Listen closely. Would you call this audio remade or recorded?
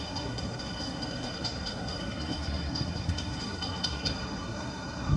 remade